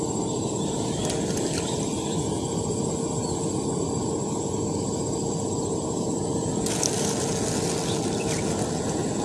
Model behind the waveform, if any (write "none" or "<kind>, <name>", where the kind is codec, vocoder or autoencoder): none